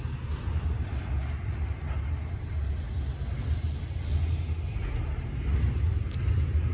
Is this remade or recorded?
recorded